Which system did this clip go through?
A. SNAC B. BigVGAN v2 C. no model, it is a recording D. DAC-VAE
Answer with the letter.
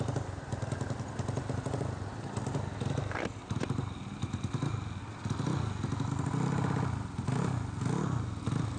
C